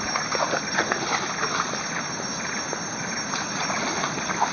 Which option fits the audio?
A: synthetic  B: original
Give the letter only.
B